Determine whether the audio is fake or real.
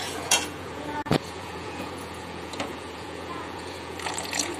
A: fake